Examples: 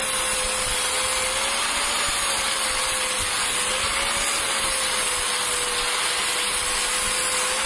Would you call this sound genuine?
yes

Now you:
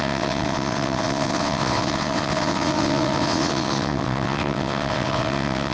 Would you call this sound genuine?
no